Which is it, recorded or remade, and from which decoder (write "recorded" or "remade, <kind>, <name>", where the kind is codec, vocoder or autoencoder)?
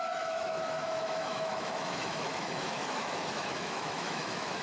remade, autoencoder, DAC-VAE